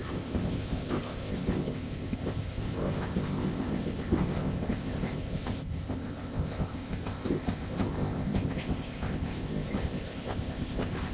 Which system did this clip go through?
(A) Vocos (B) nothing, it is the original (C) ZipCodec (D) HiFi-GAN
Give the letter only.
C